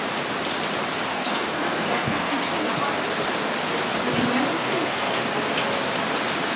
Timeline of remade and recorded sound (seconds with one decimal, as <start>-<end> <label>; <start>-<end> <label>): 0.0-1.1 recorded; 1.1-2.7 remade; 2.7-4.6 recorded; 4.6-5.2 remade; 5.2-6.6 recorded